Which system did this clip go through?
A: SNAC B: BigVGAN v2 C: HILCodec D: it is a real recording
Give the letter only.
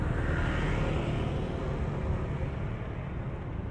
D